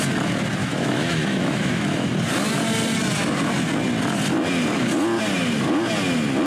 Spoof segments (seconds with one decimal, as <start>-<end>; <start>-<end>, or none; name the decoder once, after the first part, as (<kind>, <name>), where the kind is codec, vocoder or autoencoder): 0.6-2.1 (autoencoder, DAC-VAE)